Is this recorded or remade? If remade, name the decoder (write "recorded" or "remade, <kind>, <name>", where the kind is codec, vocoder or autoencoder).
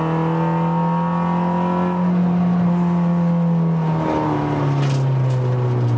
recorded